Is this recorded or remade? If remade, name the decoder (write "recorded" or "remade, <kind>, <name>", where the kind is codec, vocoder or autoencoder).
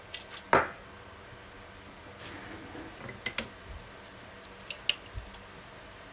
recorded